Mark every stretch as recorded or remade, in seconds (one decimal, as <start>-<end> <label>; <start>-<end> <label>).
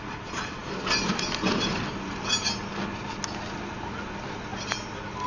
0.0-5.3 recorded